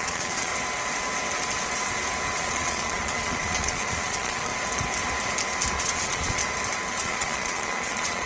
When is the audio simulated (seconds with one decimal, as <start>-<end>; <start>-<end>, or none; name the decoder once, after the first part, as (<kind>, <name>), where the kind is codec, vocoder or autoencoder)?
0.0-0.5 (vocoder, Vocos); 2.4-4.5; 5.7-6.4; 6.9-8.3